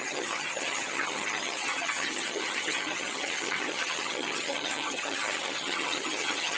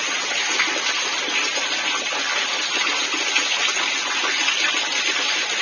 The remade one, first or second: first